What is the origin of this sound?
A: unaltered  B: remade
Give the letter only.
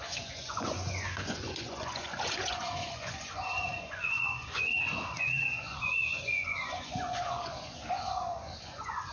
B